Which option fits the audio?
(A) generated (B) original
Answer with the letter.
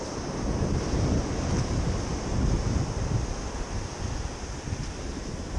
B